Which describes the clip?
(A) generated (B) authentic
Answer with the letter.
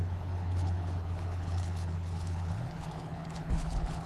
A